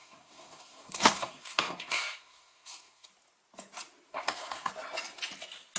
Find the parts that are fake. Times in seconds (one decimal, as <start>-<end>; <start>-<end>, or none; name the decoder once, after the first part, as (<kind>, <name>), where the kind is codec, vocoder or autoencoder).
0.0-3.1 (codec, SNAC); 4.1-4.7